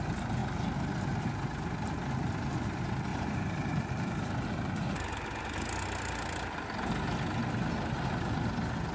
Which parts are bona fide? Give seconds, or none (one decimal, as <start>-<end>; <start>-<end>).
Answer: 0.0-3.1; 4.7-8.9